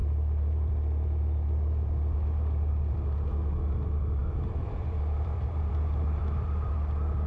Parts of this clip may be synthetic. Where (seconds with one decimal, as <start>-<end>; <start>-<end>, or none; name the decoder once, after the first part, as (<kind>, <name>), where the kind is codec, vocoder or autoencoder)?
0.0-0.7 (vocoder, BigVGAN v2); 4.2-6.7